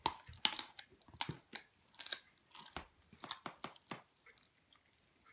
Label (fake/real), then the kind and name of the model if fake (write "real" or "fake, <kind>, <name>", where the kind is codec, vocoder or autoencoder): real